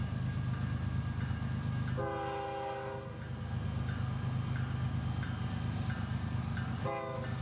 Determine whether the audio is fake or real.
real